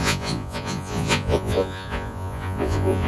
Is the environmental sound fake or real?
fake